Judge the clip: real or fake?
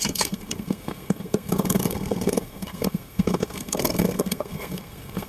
fake